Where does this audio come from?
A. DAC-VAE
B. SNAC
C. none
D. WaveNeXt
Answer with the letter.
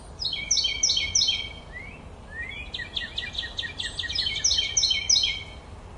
C